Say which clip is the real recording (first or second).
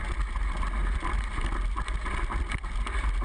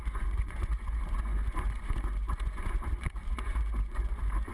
first